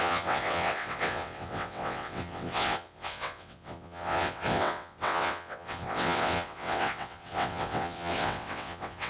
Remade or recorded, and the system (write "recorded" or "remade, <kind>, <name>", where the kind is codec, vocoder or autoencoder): remade, vocoder, WaveNeXt